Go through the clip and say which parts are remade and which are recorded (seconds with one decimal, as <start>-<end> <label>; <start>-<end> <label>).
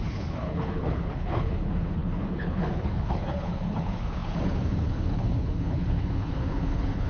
0.0-7.1 remade